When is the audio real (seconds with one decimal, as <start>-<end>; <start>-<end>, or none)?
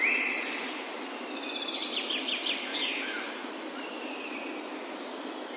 0.0-2.7; 3.5-5.6